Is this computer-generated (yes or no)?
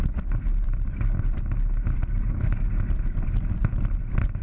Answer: yes